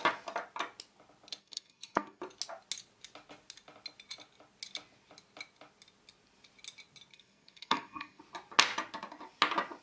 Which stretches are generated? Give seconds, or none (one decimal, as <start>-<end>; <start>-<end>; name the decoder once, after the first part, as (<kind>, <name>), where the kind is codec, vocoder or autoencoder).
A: 1.4-2.2 (codec, SNAC); 7.1-8.2